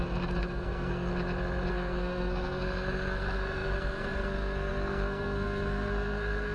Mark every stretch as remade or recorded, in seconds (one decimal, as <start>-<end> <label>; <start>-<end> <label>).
0.0-1.1 remade; 1.1-1.7 recorded; 1.7-6.5 remade